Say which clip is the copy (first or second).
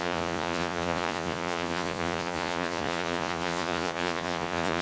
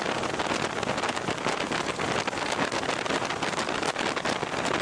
first